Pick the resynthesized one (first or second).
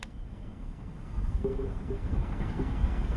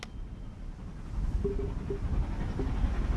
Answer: first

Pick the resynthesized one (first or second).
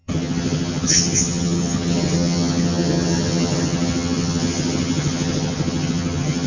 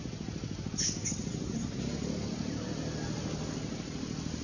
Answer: first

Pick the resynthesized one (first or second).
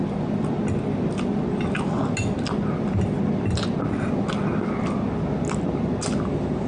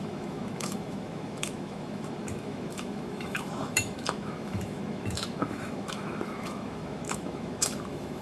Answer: second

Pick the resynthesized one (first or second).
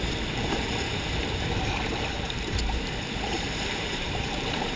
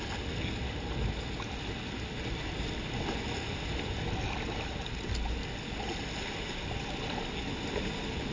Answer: first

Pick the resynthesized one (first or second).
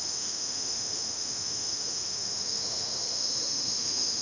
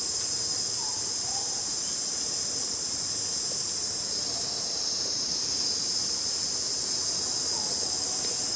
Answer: first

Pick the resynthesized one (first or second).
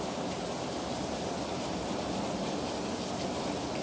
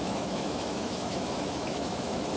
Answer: second